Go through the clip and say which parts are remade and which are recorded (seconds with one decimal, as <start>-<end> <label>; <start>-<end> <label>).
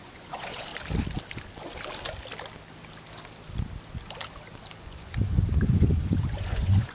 0.0-0.7 remade; 0.7-4.8 recorded; 4.8-6.9 remade